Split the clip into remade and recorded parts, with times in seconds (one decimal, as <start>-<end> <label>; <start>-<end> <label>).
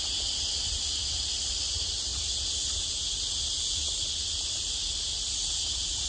0.0-6.1 recorded